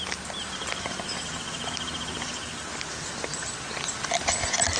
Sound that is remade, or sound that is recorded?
recorded